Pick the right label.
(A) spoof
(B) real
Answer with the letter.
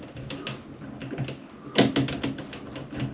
B